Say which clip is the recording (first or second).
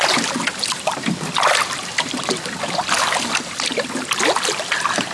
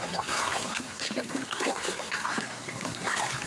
first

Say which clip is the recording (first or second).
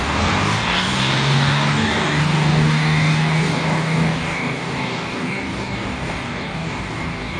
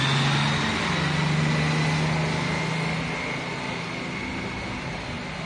second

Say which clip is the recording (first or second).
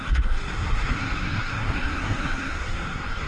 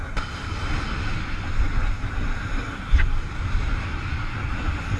second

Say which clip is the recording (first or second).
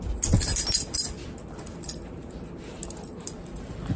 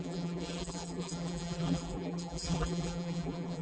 first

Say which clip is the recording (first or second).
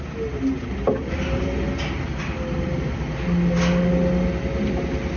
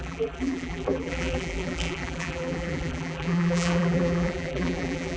first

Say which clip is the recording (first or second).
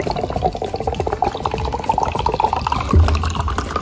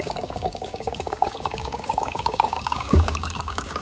first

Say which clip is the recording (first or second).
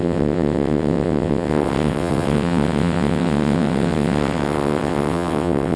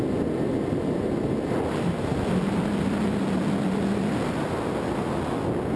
second